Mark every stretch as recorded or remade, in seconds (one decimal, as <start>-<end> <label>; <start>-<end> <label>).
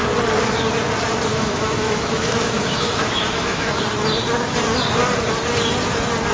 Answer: 0.0-1.3 recorded; 1.3-3.8 remade; 3.8-6.3 recorded